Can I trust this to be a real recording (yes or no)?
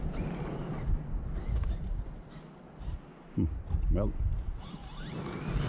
yes